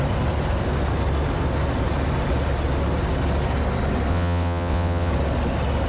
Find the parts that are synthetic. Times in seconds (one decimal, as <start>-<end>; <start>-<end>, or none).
4.1-5.1